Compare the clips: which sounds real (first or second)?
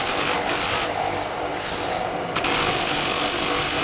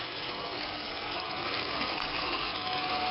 first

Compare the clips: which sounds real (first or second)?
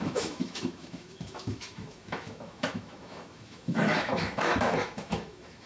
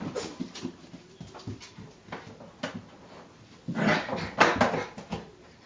second